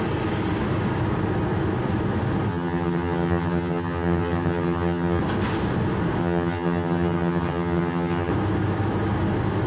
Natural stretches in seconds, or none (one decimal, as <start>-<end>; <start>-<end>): 0.0-2.5; 5.2-6.2; 8.3-9.7